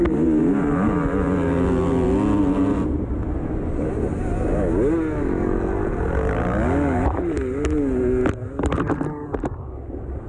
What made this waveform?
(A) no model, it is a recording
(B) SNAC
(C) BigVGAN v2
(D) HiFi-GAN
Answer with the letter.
A